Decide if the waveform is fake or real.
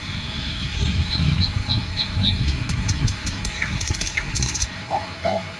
fake